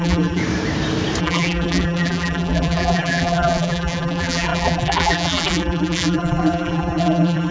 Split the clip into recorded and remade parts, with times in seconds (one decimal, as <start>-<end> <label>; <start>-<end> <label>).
0.0-0.4 remade; 0.4-1.2 recorded; 1.2-7.5 remade